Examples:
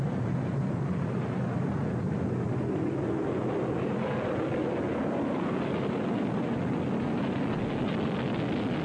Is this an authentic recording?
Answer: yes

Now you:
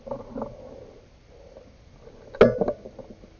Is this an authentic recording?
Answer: yes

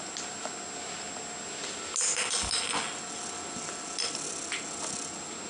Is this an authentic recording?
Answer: yes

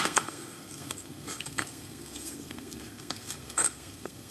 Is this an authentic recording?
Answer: no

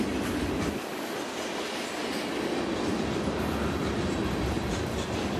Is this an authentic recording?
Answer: yes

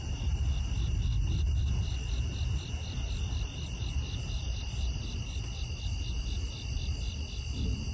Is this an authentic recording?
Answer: yes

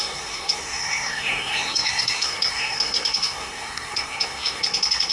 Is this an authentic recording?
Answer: no